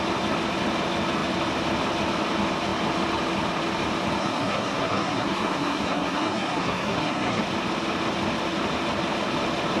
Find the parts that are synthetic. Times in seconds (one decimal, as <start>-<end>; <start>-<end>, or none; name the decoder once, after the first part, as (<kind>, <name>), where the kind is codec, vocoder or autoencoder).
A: 4.2-7.4 (codec, SNAC)